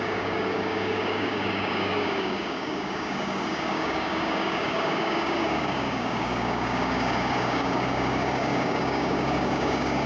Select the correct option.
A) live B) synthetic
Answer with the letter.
B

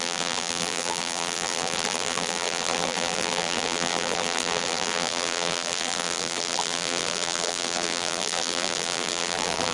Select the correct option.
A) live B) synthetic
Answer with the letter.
B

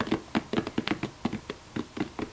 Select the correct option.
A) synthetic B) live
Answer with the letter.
B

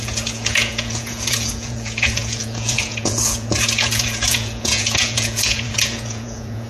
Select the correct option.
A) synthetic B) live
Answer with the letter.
A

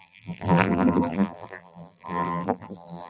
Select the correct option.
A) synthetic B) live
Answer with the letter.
A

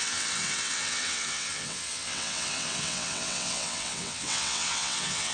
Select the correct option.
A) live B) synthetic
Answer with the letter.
B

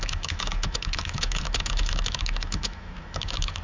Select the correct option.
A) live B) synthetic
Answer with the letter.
B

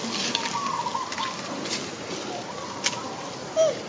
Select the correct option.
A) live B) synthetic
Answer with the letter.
A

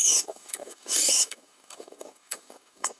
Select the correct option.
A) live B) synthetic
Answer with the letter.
B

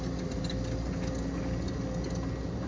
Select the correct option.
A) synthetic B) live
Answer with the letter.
B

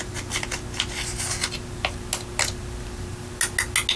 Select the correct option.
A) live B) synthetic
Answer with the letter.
A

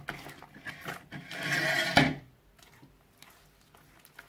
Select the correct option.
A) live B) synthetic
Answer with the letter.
A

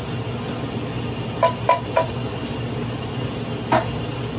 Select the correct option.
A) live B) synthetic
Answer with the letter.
A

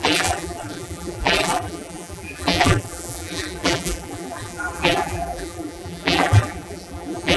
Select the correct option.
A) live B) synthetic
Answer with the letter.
B